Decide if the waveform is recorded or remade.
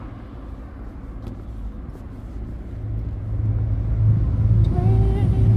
recorded